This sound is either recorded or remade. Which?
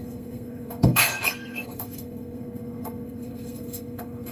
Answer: remade